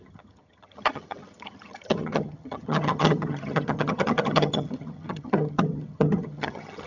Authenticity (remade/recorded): remade